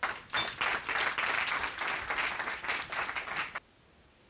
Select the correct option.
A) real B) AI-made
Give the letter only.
A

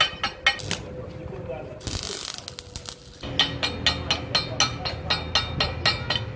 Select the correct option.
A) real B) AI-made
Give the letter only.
A